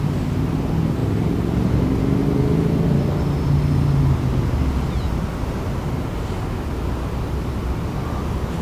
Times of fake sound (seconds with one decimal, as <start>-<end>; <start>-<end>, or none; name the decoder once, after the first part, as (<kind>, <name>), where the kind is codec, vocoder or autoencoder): none